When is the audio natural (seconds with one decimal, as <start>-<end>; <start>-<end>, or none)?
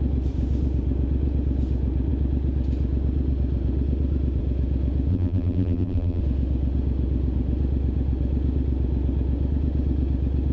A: 0.0-5.1; 6.2-10.5